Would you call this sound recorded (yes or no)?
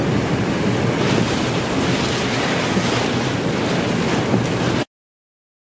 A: yes